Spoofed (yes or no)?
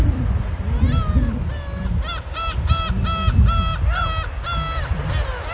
no